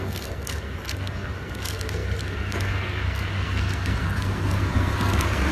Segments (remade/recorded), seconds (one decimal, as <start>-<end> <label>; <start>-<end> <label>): 0.0-5.5 remade